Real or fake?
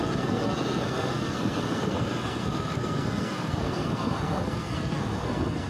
fake